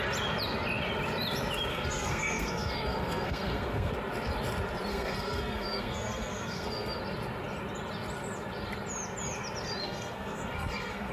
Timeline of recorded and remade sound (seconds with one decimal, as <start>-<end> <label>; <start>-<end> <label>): 0.0-1.7 recorded; 1.7-3.9 remade; 3.9-4.9 recorded; 4.9-7.0 remade; 7.0-9.8 recorded; 9.8-11.1 remade